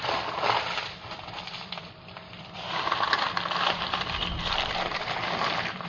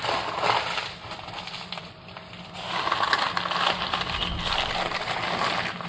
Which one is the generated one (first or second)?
first